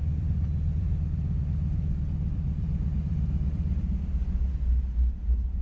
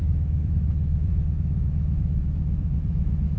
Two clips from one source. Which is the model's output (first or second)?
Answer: second